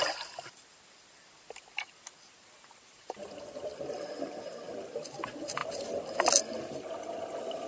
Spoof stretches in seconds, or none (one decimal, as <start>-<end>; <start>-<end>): none